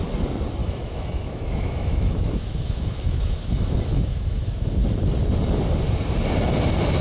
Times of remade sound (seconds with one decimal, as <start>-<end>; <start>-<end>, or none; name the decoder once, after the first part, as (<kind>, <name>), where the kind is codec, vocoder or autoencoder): 0.6-4.8 (autoencoder, DAC-VAE)